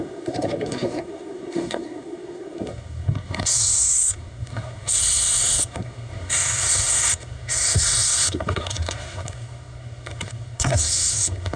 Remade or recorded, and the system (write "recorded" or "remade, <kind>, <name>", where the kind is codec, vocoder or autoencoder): remade, codec, SNAC